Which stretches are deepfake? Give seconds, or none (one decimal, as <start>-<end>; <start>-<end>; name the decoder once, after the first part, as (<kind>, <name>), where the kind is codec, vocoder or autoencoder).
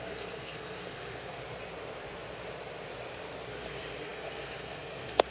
0.0-1.4 (codec, SNAC); 3.5-5.3